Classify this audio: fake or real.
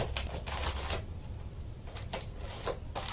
real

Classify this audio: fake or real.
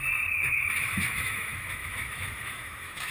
fake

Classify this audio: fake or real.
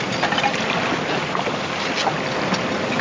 real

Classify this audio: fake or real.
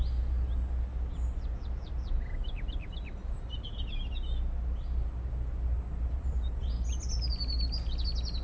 real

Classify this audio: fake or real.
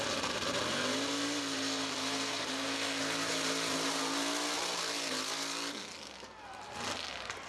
real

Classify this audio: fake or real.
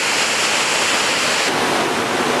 real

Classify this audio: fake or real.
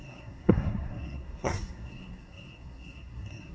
fake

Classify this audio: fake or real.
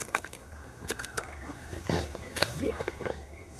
fake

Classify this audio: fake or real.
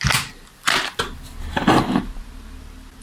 real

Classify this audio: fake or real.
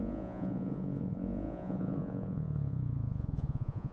fake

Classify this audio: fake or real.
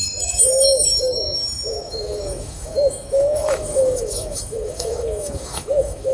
fake